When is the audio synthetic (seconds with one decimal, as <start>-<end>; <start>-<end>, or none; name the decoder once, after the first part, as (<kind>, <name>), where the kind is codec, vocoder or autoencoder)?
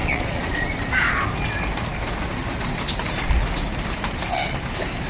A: 0.0-0.8 (vocoder, Vocos)